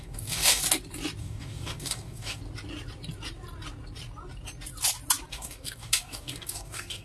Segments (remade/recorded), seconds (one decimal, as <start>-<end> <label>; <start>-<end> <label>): 0.0-0.6 remade; 0.6-1.2 recorded; 1.2-2.4 remade; 2.4-5.3 recorded; 5.3-7.0 remade